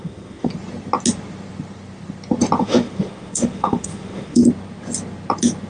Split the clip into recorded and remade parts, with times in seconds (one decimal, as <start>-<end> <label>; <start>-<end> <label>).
0.0-0.5 remade; 0.5-2.6 recorded; 2.6-4.4 remade; 4.4-5.7 recorded